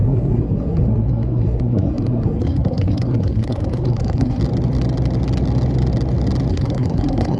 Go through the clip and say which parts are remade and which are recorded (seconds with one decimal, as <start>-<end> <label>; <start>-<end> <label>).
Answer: 0.0-4.4 remade; 4.4-6.5 recorded; 6.5-7.4 remade